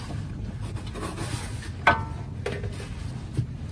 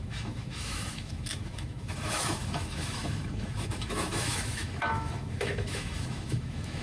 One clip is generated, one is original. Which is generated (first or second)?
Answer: second